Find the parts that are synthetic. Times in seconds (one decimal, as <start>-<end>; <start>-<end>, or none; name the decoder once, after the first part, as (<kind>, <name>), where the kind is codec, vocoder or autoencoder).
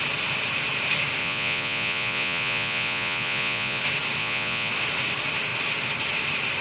1.2-3.8 (vocoder, Vocos); 4.2-4.7